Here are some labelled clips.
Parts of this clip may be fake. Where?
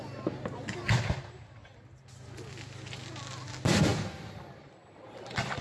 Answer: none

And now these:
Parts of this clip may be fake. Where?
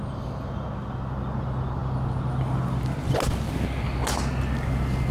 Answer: none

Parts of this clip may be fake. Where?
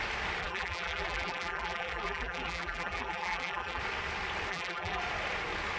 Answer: 0.4-3.8 (vocoder, BigVGAN v2); 4.5-5.0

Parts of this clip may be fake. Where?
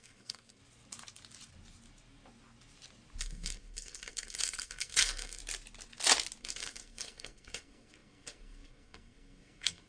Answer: 0.0-0.6 (codec, SNAC); 3.2-5.4; 6.4-9.9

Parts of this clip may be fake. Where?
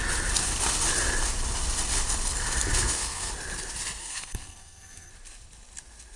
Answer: 2.7-3.3 (codec, SNAC); 4.0-5.1